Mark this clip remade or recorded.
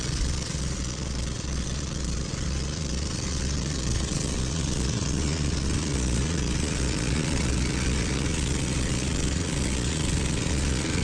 remade